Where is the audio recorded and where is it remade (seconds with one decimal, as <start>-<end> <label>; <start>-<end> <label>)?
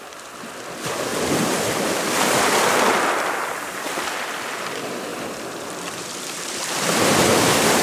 0.0-1.1 remade; 1.1-1.7 recorded; 1.7-7.8 remade